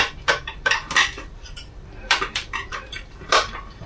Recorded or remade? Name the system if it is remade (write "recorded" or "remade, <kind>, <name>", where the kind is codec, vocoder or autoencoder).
remade, vocoder, BigVGAN v2